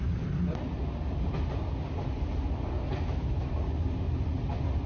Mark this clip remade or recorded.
recorded